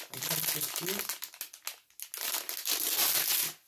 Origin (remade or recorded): recorded